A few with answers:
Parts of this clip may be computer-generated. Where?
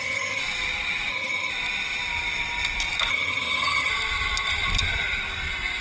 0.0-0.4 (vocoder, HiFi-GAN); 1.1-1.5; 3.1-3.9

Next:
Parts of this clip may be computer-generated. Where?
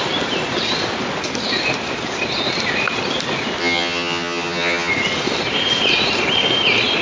3.6-4.9 (vocoder, HiFi-GAN)